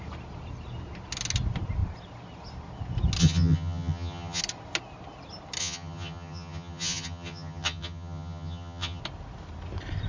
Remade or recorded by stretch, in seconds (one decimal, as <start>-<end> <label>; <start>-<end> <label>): 0.0-3.2 recorded; 3.2-4.4 remade; 4.4-5.6 recorded; 5.6-9.0 remade; 9.0-10.1 recorded